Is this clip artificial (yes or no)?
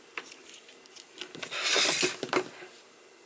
no